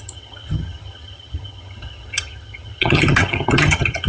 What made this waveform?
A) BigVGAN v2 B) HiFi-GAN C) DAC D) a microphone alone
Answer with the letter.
B